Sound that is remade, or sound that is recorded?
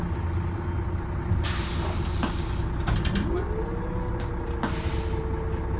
recorded